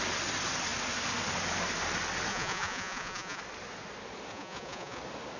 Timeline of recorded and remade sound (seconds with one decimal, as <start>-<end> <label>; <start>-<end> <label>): 0.0-2.3 recorded; 2.3-3.4 remade; 3.4-4.3 recorded; 4.3-5.0 remade; 5.0-5.4 recorded